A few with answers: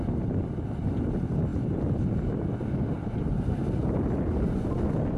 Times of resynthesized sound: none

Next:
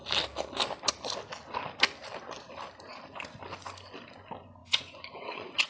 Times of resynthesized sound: 4.6-5.7

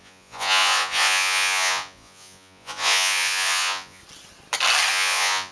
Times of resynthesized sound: 0.0-4.0; 4.9-5.5

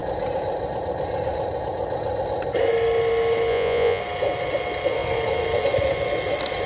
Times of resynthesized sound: 3.5-4.0

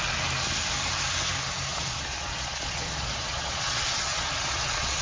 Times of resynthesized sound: 1.7-5.0

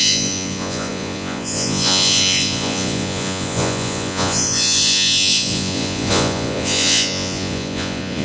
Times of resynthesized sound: 0.0-8.2

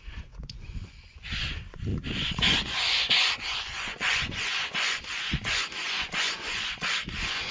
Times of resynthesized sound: 0.0-7.5